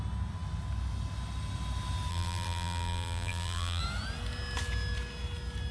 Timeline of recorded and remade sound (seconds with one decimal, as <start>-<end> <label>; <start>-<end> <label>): 0.0-2.1 recorded; 2.1-3.8 remade; 3.8-5.7 recorded